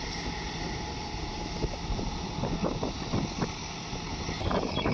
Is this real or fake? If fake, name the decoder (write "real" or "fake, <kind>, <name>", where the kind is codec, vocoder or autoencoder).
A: real